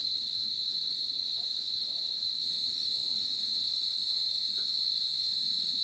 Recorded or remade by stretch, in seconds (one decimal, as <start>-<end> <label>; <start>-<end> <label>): 0.0-5.8 remade